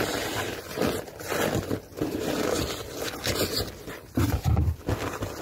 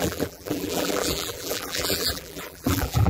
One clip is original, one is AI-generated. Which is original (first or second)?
first